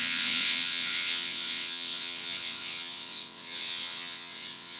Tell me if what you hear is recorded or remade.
remade